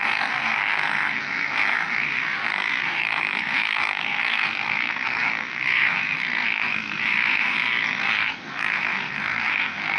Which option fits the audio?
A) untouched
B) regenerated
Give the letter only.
B